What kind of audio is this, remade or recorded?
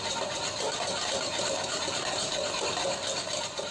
recorded